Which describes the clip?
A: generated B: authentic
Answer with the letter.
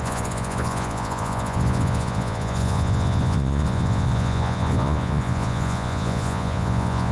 A